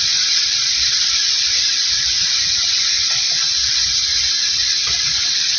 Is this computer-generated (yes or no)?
yes